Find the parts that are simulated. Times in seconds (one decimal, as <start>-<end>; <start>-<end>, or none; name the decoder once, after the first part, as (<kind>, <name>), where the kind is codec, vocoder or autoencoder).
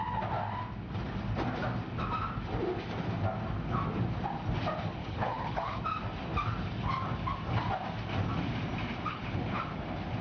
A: 5.0-5.8 (codec, HILCodec); 9.1-9.6